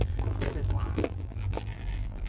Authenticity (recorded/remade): remade